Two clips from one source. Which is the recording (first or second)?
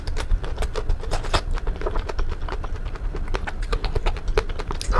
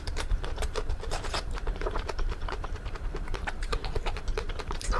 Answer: first